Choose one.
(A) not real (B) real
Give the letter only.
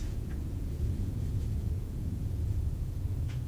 A